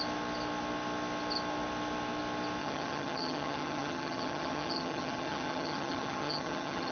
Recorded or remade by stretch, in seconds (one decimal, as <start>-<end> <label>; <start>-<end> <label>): 0.0-2.6 recorded; 2.6-6.9 remade